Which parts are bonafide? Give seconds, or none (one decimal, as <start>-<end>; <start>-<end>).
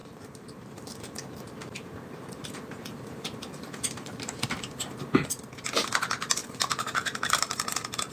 4.4-6.4